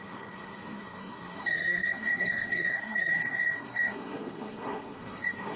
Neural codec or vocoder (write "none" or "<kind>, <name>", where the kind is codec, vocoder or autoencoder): codec, SNAC